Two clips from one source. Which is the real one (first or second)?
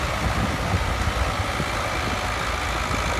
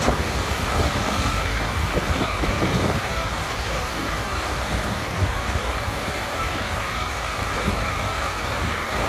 first